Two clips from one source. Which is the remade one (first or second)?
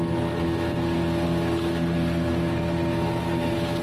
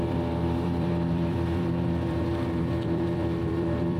second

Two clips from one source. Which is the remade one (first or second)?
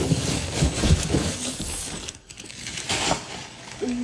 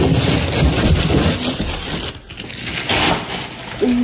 first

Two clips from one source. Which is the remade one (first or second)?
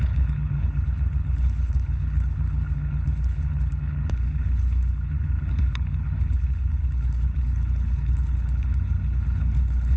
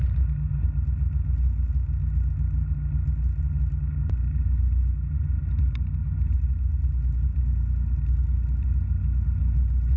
first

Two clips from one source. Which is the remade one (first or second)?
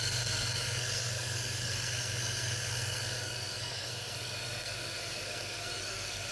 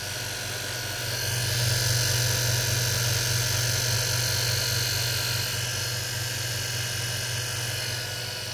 first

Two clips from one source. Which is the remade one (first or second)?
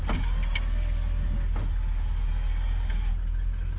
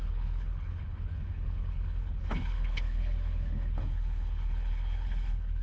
second